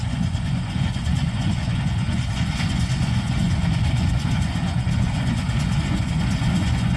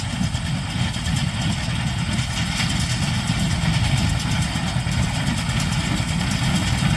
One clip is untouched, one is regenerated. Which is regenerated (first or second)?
first